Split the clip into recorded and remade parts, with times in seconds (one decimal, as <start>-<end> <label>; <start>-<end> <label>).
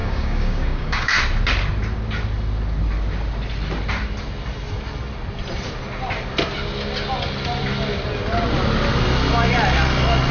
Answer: 0.0-1.1 remade; 1.1-10.3 recorded